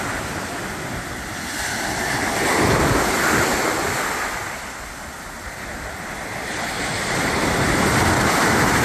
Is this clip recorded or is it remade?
recorded